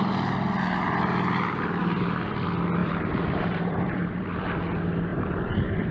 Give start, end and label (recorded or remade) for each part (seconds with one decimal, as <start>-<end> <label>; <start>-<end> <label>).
0.0-1.8 recorded; 1.8-2.3 remade; 2.3-2.8 recorded; 2.8-4.2 remade; 4.2-5.1 recorded; 5.1-5.9 remade